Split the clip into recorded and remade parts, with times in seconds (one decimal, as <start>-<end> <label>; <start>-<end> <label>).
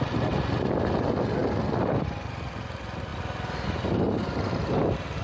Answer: 0.0-5.2 recorded